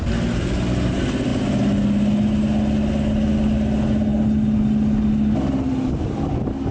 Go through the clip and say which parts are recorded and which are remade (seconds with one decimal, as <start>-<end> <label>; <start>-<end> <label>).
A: 0.0-6.7 recorded